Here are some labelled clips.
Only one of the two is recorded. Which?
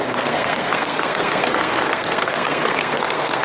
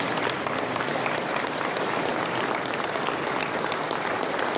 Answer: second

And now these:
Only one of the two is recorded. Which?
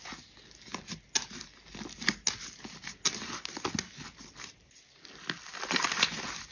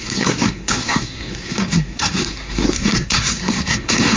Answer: first